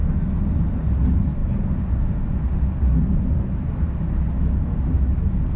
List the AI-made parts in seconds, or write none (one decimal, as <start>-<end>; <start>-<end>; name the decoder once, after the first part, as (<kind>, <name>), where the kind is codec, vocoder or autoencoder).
none